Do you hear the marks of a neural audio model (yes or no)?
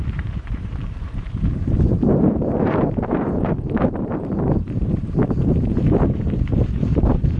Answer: yes